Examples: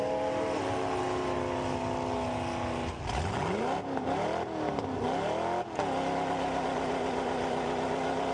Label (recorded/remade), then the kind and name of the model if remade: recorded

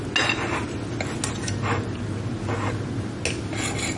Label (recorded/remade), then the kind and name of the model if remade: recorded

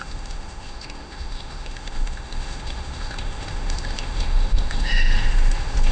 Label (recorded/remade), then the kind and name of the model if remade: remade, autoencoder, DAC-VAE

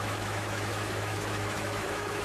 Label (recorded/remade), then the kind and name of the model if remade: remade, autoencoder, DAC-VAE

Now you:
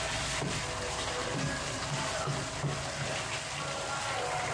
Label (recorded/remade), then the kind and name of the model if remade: recorded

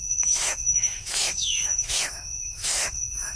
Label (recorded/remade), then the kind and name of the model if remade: remade, autoencoder, DAC-VAE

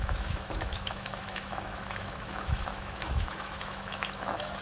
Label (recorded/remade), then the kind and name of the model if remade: remade, autoencoder, DAC-VAE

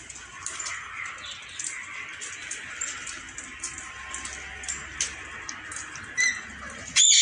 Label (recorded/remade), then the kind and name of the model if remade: recorded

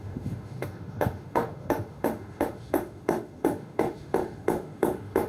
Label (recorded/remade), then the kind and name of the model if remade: remade, autoencoder, DAC-VAE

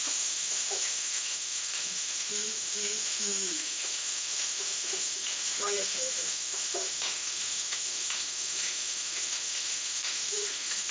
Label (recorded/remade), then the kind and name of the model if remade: remade, autoencoder, DAC-VAE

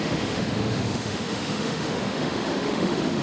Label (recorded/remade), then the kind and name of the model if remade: remade, autoencoder, DAC-VAE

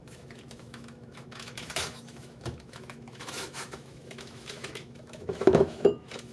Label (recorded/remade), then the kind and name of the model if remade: remade, autoencoder, DAC-VAE